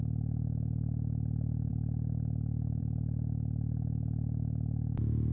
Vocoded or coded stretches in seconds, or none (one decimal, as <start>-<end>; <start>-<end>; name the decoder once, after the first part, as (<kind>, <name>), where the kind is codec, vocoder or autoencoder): none